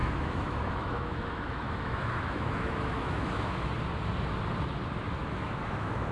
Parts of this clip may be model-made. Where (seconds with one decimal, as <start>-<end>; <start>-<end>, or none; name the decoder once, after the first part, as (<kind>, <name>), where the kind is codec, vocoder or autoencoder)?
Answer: 0.0-3.7 (autoencoder, DAC-VAE); 5.2-6.1